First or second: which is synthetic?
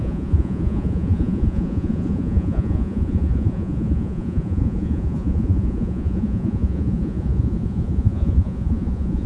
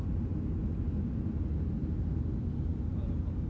first